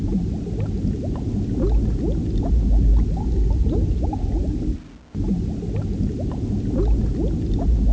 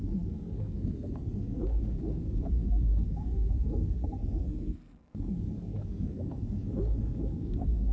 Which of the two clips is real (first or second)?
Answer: first